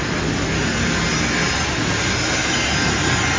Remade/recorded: recorded